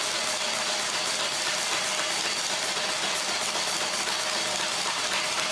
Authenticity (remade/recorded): recorded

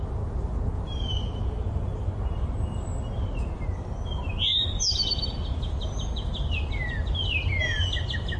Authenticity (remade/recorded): recorded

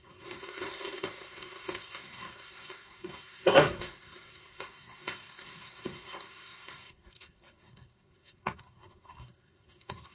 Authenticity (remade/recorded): remade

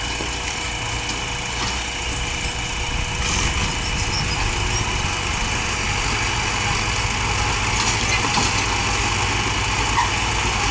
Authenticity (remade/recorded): recorded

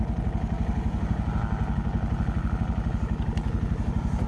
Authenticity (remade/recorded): recorded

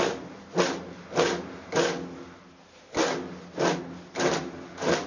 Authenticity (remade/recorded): recorded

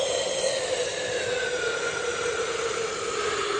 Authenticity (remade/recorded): recorded